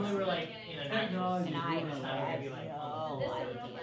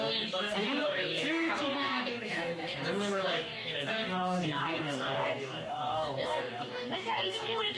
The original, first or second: first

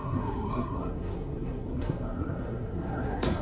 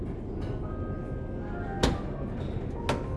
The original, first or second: second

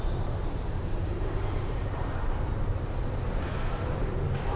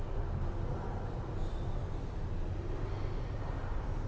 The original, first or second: second